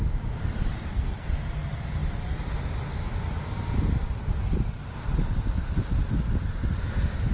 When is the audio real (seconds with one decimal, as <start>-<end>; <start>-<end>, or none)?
0.0-0.7; 1.4-7.3